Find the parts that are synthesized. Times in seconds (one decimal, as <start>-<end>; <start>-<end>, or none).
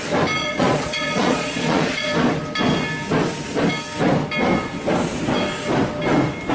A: 0.4-2.1